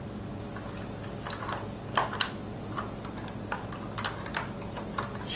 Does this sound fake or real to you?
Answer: real